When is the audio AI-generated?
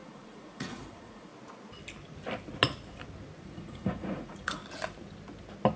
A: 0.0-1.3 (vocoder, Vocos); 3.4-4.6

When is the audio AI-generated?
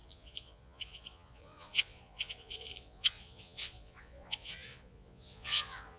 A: 0.0-6.0 (vocoder, Vocos)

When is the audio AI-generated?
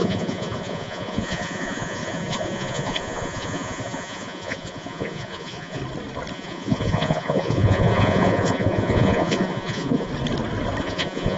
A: 0.0-5.8 (vocoder, Vocos); 6.3-10.1; 10.8-11.4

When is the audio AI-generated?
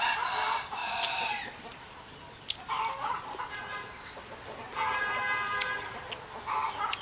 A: none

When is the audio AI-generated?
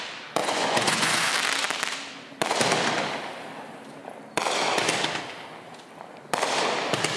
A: 0.4-1.3 (vocoder, Vocos)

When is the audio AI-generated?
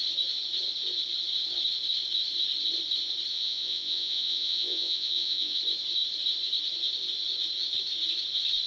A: 3.3-5.6 (vocoder, Vocos)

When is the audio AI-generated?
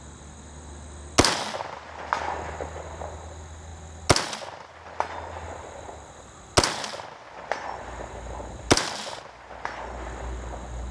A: none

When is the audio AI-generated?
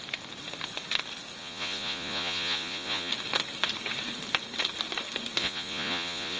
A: 1.4-3.1 (vocoder, Vocos); 5.4-6.4